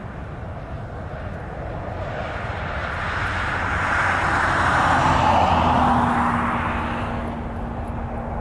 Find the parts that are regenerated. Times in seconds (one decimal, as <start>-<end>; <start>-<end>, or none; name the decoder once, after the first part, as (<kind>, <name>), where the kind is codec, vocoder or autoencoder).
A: none